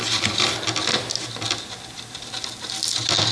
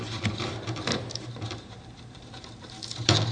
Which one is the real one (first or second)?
first